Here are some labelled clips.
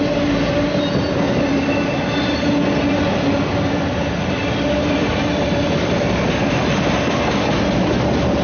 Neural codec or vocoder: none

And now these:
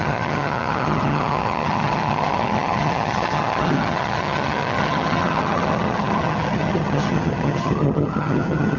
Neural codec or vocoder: vocoder, HiFi-GAN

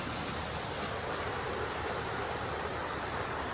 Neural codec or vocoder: none